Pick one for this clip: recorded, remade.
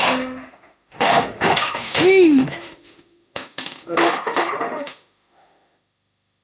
remade